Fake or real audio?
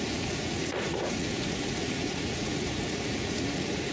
fake